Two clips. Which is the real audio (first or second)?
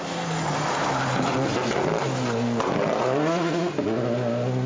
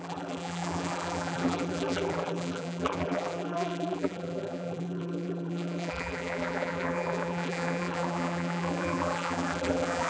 first